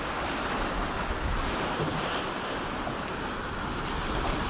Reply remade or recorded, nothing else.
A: recorded